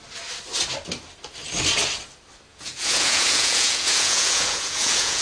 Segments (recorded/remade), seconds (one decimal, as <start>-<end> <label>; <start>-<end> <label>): 0.0-2.5 recorded; 2.5-5.2 remade